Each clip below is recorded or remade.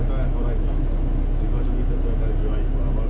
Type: recorded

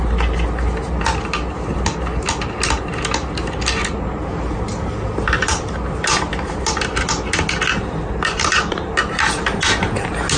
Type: recorded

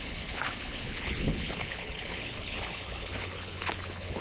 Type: remade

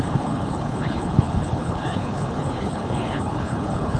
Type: remade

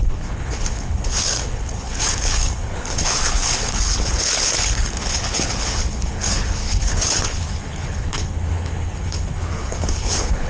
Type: remade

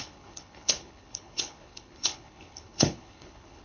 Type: remade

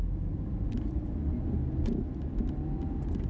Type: recorded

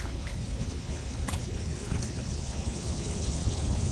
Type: remade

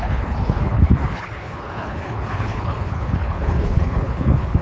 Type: remade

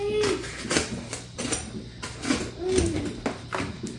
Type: recorded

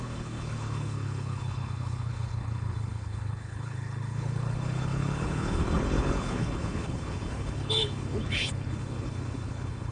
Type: remade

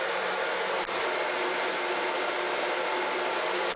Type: recorded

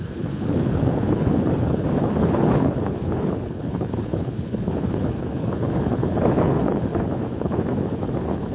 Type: remade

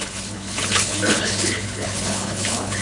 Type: remade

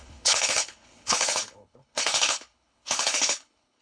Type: remade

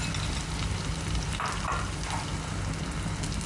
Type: recorded